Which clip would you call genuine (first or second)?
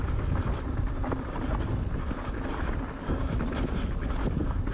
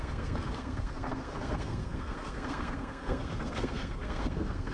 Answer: first